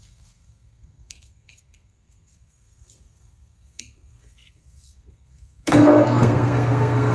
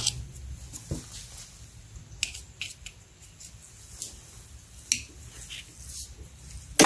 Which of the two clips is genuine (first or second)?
second